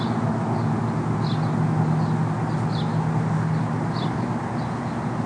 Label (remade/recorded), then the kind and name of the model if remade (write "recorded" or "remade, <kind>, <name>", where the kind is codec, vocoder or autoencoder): recorded